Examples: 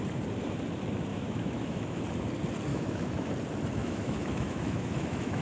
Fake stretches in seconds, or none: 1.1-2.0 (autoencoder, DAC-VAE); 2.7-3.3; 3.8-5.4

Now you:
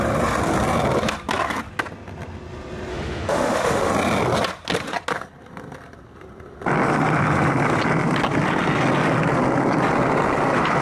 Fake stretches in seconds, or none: 2.9-3.9 (autoencoder, DAC-VAE)

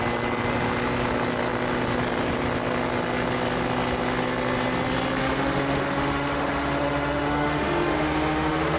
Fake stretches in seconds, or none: 5.2-8.8 (autoencoder, DAC-VAE)

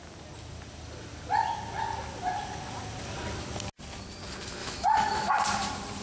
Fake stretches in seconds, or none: 4.6-5.3 (autoencoder, DAC-VAE)

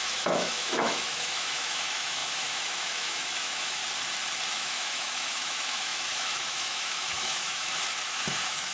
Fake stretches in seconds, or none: 0.0-3.8 (autoencoder, DAC-VAE); 4.5-8.7

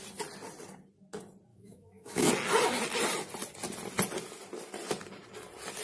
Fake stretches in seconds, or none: 1.5-2.3 (autoencoder, DAC-VAE)

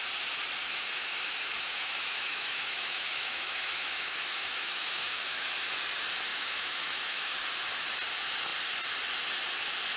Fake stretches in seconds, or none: 0.6-5.7 (autoencoder, DAC-VAE); 6.3-7.3